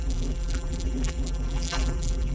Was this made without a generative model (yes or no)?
no